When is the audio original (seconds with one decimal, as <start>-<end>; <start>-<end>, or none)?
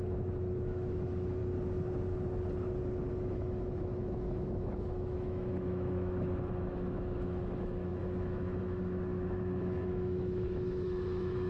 1.4-3.1